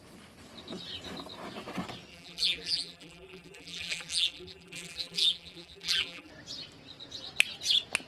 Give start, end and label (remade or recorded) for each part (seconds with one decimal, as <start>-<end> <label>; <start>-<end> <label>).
0.0-2.1 recorded; 2.1-6.3 remade; 6.3-8.1 recorded